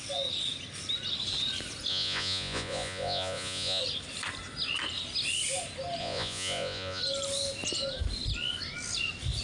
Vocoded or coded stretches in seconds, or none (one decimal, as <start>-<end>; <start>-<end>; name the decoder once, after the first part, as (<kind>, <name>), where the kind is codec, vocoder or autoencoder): 1.9-3.8 (vocoder, Vocos); 6.0-7.0